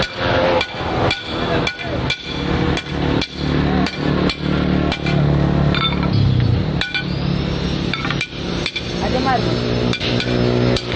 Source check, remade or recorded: recorded